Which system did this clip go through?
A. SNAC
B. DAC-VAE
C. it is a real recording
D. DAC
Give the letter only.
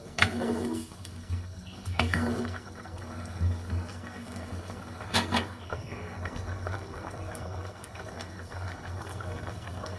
A